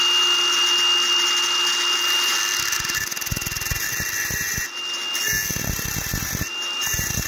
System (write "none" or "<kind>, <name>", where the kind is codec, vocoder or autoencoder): none